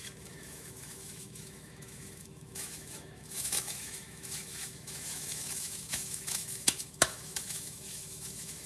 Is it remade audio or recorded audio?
remade